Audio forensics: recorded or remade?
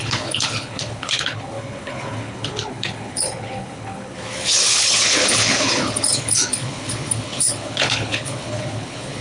remade